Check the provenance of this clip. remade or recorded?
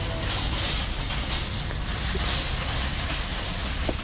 recorded